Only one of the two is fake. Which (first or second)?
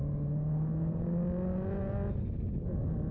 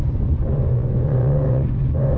second